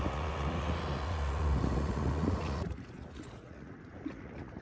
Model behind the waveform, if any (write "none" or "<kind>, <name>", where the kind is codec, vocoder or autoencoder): vocoder, Vocos